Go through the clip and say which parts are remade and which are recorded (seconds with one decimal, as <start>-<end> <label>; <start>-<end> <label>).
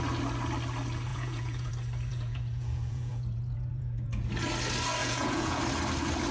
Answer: 0.0-1.1 recorded; 1.1-1.7 remade; 1.7-2.1 recorded; 2.1-4.3 remade; 4.3-5.0 recorded; 5.0-5.6 remade; 5.6-6.3 recorded